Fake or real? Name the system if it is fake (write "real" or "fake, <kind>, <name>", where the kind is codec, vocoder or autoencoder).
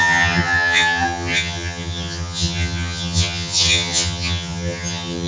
fake, vocoder, HiFi-GAN